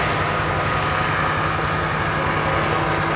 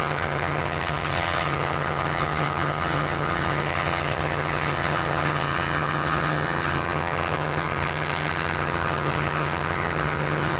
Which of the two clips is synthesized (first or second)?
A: second